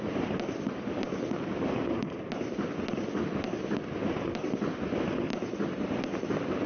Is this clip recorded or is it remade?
recorded